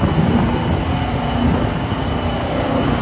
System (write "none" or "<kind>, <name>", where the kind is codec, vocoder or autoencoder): none